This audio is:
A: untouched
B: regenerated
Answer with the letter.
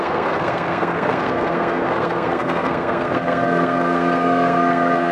B